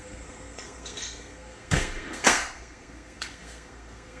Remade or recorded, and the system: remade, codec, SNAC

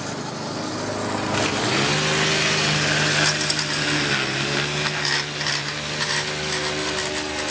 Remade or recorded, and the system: recorded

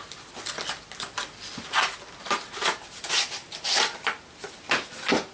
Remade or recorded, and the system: recorded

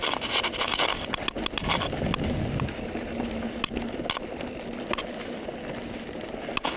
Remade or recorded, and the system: recorded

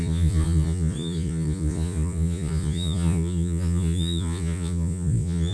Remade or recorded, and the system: remade, vocoder, Vocos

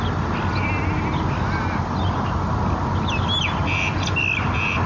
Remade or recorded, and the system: recorded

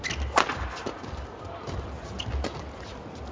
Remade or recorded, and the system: recorded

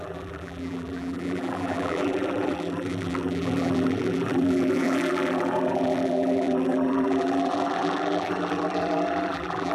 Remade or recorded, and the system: remade, vocoder, BigVGAN v2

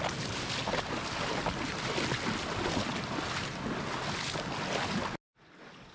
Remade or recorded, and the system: recorded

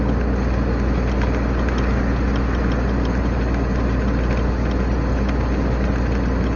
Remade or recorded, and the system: recorded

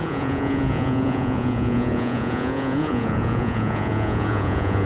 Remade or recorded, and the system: remade, vocoder, Vocos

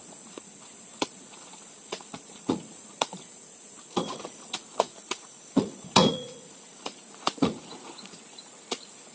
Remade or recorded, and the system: remade, vocoder, Vocos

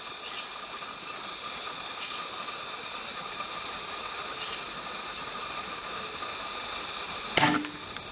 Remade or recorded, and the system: recorded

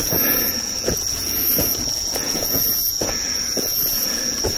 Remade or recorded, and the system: remade, vocoder, Vocos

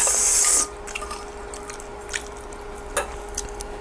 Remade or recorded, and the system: recorded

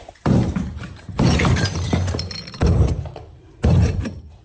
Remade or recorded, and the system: remade, vocoder, BigVGAN v2